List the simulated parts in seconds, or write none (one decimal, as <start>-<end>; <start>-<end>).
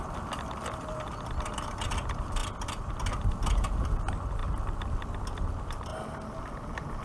none